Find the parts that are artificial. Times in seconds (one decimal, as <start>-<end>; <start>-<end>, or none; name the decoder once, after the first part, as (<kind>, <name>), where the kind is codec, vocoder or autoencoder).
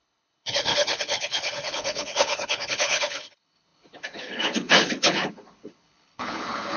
0.0-6.8 (codec, HILCodec)